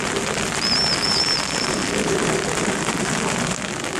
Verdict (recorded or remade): recorded